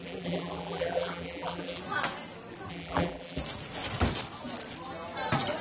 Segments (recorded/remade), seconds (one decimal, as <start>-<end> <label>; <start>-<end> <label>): 0.0-1.8 remade; 1.8-2.7 recorded; 2.7-3.4 remade; 3.4-5.6 recorded